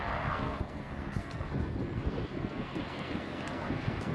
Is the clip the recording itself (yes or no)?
no